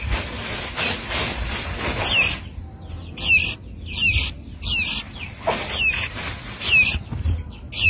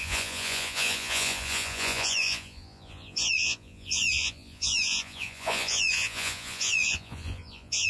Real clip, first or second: first